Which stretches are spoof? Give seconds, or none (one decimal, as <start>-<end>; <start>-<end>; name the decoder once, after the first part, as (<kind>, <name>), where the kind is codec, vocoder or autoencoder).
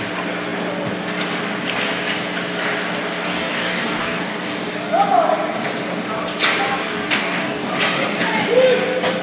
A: 3.2-4.7 (codec, DAC); 6.8-7.7